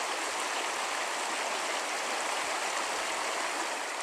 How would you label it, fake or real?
real